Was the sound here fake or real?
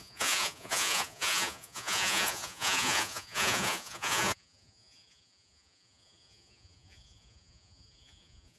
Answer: fake